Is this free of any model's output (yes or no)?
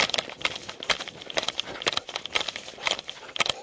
yes